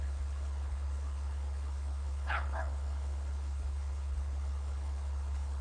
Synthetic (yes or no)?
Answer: yes